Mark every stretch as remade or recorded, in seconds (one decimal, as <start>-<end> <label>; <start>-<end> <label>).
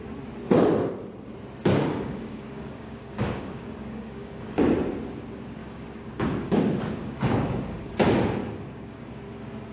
0.0-1.7 recorded; 1.7-4.6 remade; 4.6-5.6 recorded; 5.6-6.6 remade; 6.6-7.0 recorded; 7.0-8.0 remade; 8.0-8.4 recorded; 8.4-9.1 remade; 9.1-9.7 recorded